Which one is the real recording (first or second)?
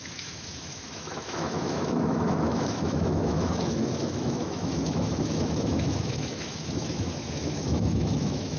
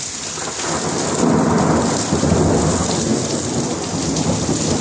second